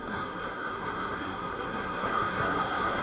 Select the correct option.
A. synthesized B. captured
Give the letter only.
A